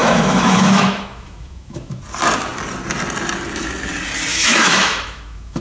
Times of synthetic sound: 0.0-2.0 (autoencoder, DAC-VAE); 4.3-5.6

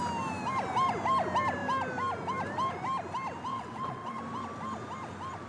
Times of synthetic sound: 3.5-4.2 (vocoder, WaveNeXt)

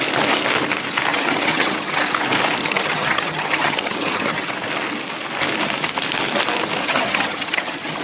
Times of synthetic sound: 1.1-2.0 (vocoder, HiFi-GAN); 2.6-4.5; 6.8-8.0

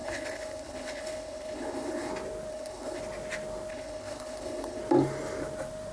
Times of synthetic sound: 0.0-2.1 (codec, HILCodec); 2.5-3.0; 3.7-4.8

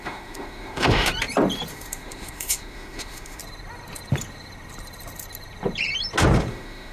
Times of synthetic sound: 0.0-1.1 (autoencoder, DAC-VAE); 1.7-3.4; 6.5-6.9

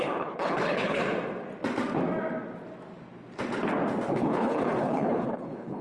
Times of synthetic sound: 0.0-1.0 (codec, HILCodec); 4.1-5.8